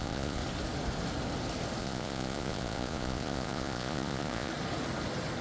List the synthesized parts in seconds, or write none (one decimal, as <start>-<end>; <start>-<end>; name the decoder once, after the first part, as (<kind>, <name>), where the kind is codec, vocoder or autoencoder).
0.0-0.4 (vocoder, Vocos); 1.8-4.5